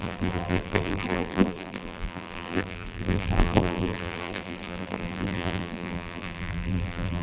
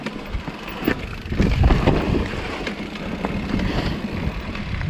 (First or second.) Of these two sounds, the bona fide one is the second